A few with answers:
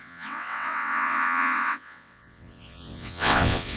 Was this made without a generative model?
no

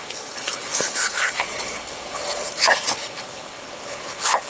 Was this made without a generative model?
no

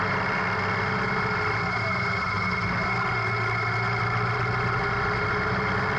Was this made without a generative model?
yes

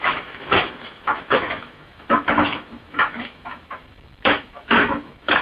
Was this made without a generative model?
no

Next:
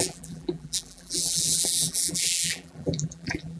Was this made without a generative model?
no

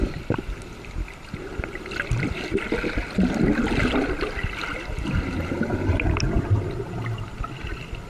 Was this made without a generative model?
yes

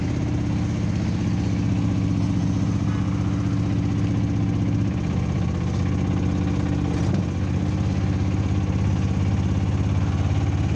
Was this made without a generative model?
yes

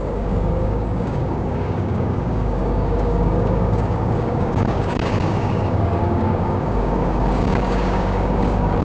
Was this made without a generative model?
no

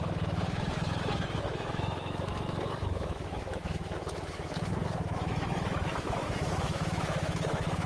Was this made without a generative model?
no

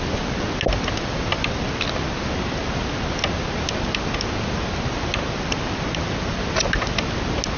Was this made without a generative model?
yes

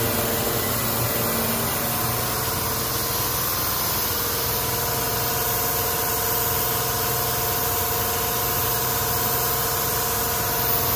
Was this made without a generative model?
yes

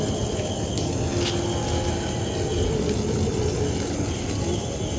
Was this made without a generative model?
yes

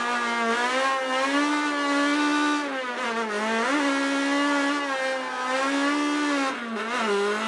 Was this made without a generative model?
yes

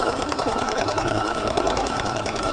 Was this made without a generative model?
no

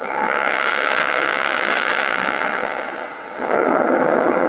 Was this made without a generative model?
no